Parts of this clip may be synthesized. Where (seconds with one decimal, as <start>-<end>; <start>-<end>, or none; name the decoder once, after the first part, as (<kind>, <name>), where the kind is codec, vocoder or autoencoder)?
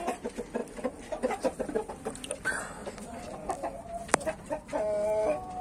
none